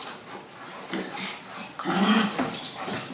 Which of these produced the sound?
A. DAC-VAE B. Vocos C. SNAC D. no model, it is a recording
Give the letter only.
D